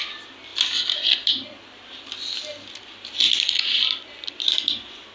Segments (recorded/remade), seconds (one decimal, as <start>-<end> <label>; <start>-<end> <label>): 0.0-5.1 recorded